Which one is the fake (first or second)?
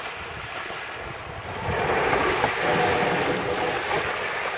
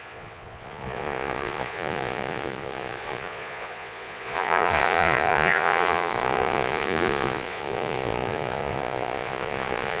second